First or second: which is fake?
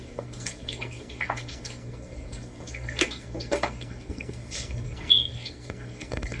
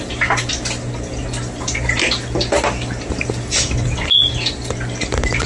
first